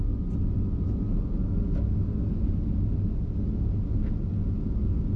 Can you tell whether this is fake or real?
real